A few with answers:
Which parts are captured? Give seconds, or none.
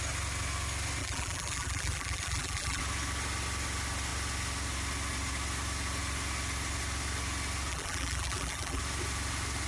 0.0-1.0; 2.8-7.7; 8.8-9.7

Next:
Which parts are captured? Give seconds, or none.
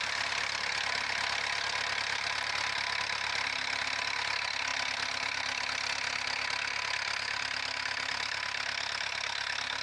0.0-9.8